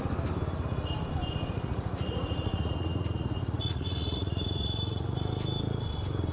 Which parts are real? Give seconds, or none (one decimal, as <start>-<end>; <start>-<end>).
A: 0.0-1.5; 5.3-6.3